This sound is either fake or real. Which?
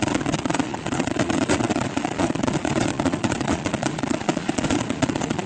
fake